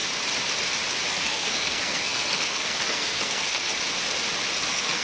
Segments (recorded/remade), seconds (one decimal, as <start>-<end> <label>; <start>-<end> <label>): 0.0-1.1 recorded; 1.1-3.7 remade; 3.7-4.6 recorded; 4.6-5.0 remade